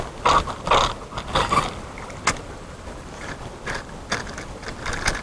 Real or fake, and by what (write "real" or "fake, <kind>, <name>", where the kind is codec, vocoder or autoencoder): real